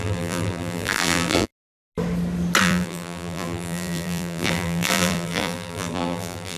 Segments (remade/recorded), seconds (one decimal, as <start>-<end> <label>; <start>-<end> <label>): 0.0-1.5 remade; 1.5-2.6 recorded; 2.6-6.6 remade

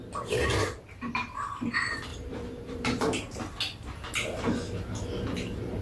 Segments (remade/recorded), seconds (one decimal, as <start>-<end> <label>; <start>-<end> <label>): 0.0-2.1 recorded; 2.1-3.0 remade; 3.0-5.8 recorded

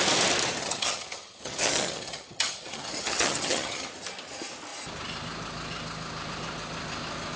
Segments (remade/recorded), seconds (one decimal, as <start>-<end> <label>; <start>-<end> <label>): 0.0-0.6 recorded; 0.6-3.9 remade; 3.9-7.4 recorded

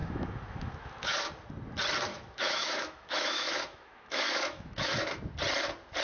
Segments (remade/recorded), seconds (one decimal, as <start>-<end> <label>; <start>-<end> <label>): 0.0-1.3 remade; 1.3-2.1 recorded; 2.1-5.0 remade; 5.0-6.0 recorded

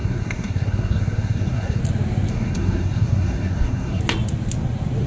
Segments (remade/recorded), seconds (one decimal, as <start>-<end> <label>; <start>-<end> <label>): 0.0-1.8 remade; 1.8-2.3 recorded; 2.3-4.0 remade; 4.0-5.1 recorded